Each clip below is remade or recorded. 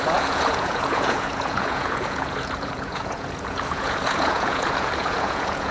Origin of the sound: remade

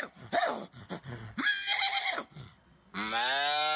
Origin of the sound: recorded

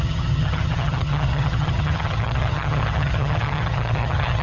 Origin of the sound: remade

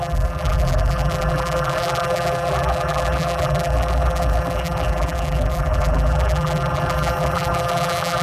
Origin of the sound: remade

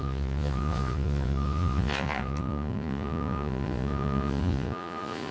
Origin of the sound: remade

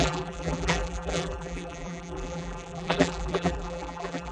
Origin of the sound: remade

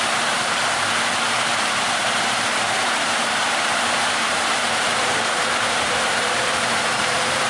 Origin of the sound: remade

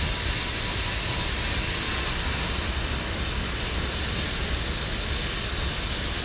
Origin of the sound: recorded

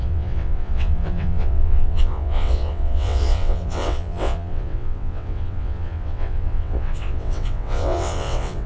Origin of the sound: remade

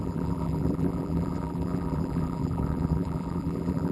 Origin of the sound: remade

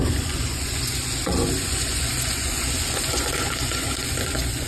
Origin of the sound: remade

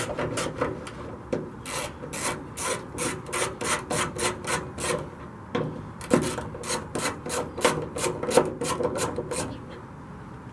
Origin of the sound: recorded